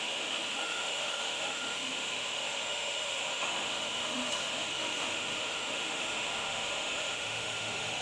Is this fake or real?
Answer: fake